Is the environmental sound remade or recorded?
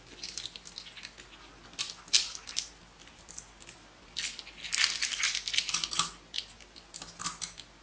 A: recorded